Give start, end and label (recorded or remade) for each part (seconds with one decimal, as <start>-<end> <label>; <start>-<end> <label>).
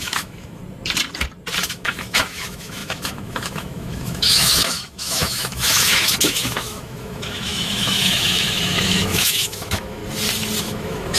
0.0-0.6 remade; 0.6-1.6 recorded; 1.6-10.0 remade; 10.0-10.6 recorded; 10.6-11.2 remade